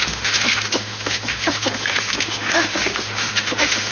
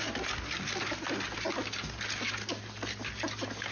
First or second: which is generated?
first